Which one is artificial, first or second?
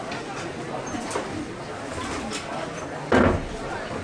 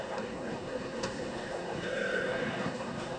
second